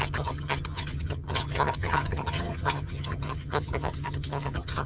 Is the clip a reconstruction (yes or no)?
yes